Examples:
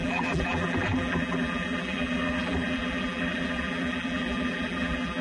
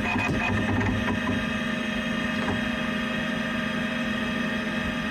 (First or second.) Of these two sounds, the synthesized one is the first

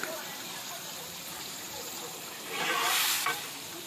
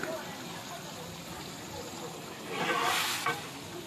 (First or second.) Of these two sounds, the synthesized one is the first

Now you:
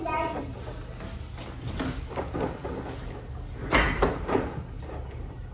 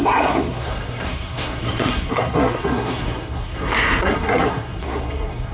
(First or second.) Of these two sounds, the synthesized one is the second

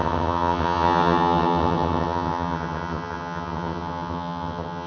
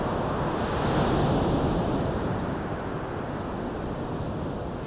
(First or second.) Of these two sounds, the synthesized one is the first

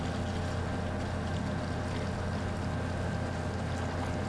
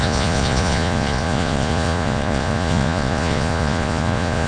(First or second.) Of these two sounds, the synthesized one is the second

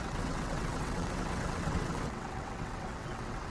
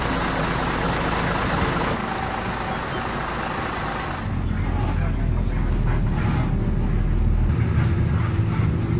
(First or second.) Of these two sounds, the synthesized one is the first